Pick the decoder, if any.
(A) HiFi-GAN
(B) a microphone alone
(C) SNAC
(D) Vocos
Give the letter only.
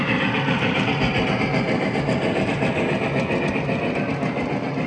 B